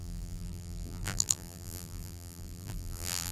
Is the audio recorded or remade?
remade